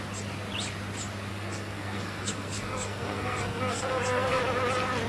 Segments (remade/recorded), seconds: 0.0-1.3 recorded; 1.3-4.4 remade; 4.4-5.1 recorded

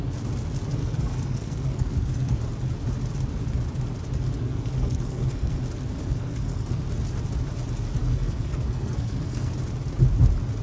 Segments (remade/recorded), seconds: 0.0-0.8 recorded; 0.8-2.4 remade; 2.4-4.4 recorded; 4.4-5.6 remade; 5.6-6.0 recorded; 6.0-6.8 remade; 6.8-8.0 recorded; 8.0-9.5 remade; 9.5-10.6 recorded

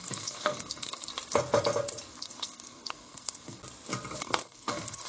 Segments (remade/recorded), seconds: 0.0-1.1 remade; 1.1-2.1 recorded; 2.1-3.6 remade; 3.6-4.2 recorded; 4.2-5.1 remade

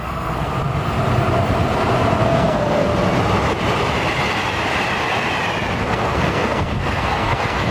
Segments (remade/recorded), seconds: 0.0-0.5 remade; 0.5-2.2 recorded; 2.2-2.9 remade; 2.9-5.8 recorded; 5.8-7.7 remade

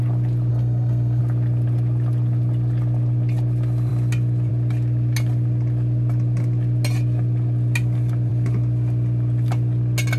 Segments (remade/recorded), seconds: 0.0-0.5 recorded; 0.5-1.2 remade; 1.2-10.2 recorded

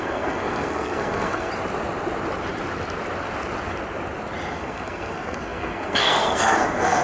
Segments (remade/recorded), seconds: 0.0-1.5 remade; 1.5-4.5 recorded; 4.5-7.0 remade